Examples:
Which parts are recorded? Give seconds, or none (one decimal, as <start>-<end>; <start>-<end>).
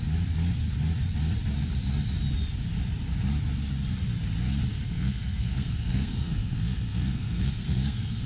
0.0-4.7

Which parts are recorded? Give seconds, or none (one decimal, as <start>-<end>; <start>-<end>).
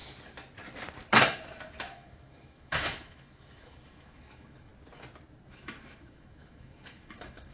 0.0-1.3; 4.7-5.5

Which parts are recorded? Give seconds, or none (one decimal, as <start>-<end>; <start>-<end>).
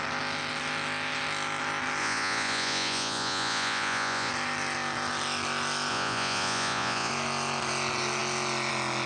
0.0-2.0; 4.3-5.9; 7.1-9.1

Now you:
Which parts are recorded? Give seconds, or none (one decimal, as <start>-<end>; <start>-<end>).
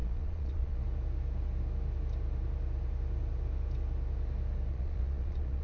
0.8-4.7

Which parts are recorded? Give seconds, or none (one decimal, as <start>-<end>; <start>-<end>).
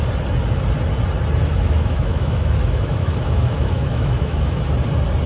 0.0-1.4; 4.6-5.3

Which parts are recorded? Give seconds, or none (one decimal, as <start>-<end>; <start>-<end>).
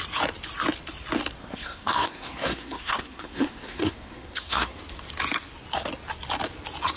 0.0-1.4; 4.8-7.0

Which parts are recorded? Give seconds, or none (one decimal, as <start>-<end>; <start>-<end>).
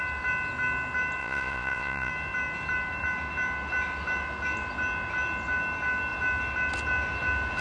0.0-1.2; 2.1-7.6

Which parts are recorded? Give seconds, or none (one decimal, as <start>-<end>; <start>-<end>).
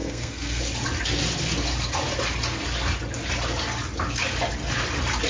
0.6-5.3